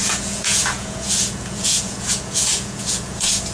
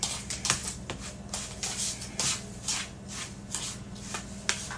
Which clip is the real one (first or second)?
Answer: second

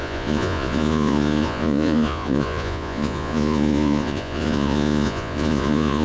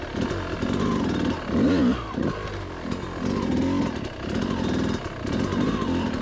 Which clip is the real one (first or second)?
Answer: second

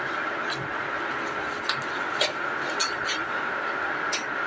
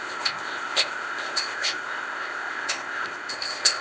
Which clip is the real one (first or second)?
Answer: first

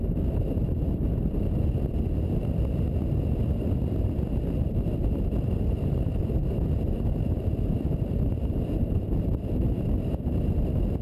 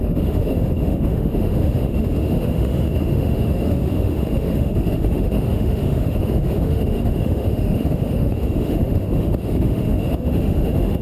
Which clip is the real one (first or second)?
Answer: first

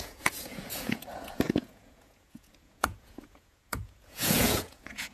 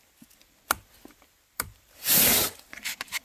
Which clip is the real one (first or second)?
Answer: second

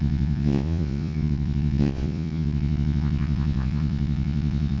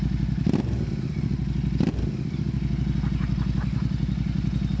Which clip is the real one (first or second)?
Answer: second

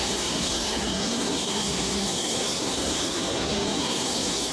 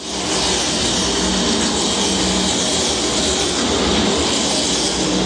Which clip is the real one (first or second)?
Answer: second